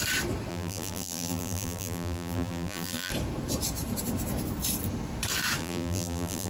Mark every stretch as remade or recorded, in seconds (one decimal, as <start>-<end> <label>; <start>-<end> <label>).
0.0-0.5 recorded; 0.5-3.1 remade; 3.1-5.6 recorded; 5.6-6.5 remade